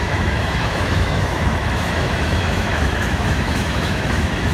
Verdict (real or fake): fake